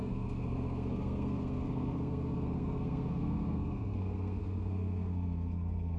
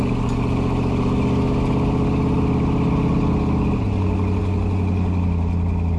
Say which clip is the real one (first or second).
second